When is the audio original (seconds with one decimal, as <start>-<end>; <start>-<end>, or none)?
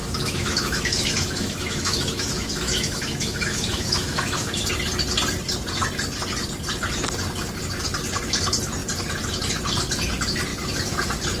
4.7-11.4